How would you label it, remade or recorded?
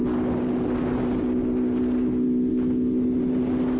recorded